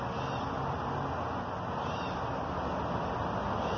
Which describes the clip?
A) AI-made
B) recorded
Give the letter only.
B